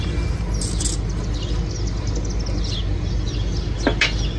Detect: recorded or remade recorded